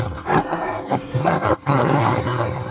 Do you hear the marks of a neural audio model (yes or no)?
yes